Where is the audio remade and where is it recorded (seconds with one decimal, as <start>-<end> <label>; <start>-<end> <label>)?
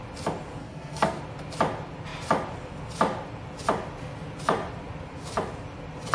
0.0-0.6 recorded; 0.6-1.2 remade; 1.2-6.1 recorded